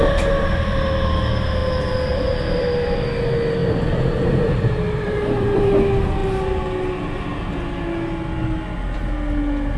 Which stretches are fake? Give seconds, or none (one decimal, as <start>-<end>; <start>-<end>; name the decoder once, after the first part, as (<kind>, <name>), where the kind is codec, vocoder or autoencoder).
1.6-3.0 (vocoder, BigVGAN v2); 3.6-5.6